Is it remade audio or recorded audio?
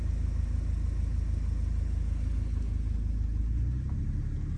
recorded